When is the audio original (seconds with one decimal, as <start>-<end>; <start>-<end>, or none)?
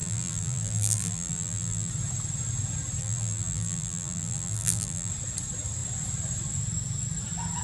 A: 1.9-3.0; 5.1-7.6